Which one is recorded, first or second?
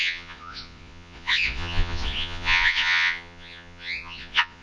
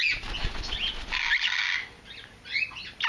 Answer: second